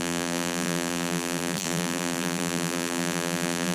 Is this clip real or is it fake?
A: fake